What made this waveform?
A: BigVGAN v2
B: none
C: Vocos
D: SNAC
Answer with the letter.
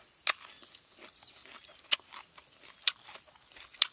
B